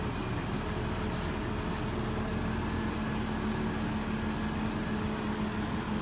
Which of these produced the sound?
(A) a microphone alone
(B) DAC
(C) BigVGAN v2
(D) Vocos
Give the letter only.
A